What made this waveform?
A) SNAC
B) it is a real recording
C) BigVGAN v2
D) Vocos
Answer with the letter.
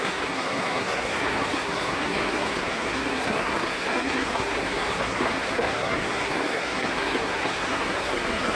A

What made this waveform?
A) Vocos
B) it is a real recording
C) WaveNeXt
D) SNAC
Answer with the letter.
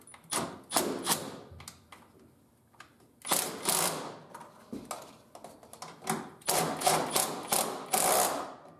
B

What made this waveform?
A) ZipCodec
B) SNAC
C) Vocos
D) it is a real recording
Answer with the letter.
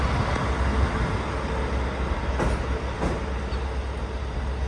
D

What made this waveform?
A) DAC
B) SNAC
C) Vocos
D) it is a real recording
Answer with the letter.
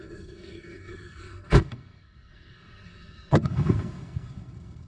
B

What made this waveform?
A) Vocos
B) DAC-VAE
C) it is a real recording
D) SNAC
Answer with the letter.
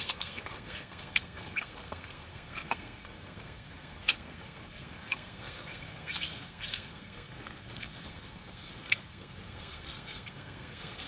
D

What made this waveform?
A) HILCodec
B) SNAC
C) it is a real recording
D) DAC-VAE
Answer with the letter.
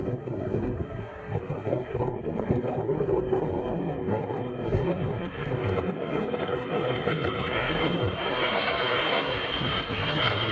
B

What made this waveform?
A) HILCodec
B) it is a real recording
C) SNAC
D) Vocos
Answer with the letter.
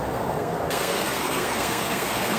C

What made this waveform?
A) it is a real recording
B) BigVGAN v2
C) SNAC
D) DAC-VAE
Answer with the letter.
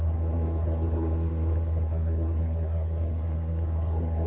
C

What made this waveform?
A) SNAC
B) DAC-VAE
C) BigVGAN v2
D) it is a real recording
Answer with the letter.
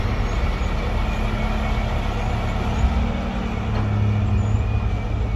D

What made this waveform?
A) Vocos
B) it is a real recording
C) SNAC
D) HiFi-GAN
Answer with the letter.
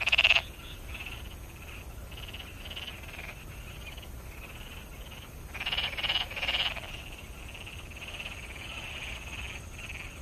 B